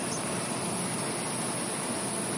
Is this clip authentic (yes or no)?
yes